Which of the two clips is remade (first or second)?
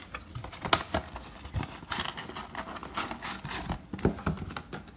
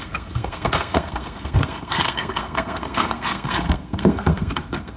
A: second